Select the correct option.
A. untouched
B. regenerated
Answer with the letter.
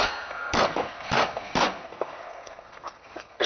B